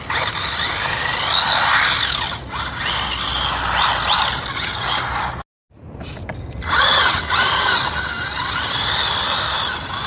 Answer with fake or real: real